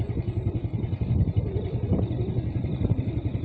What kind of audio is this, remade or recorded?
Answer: recorded